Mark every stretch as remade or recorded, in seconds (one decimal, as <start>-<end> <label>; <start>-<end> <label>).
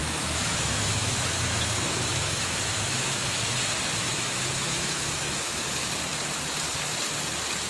0.0-3.4 remade; 3.4-4.0 recorded; 4.0-5.9 remade; 5.9-7.7 recorded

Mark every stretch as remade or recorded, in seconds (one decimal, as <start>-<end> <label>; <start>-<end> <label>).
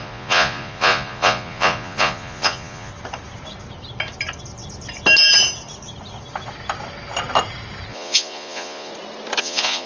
0.0-2.9 remade; 2.9-7.9 recorded; 7.9-8.9 remade; 8.9-9.4 recorded; 9.4-9.9 remade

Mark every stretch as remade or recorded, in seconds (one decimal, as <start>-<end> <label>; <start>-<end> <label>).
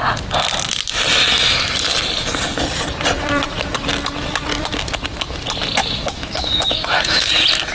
0.0-5.8 recorded; 5.8-7.3 remade; 7.3-7.7 recorded